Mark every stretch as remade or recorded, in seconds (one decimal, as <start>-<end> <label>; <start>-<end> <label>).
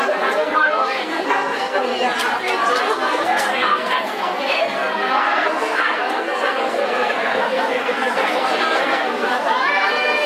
0.0-1.9 remade; 1.9-2.8 recorded; 2.8-10.3 remade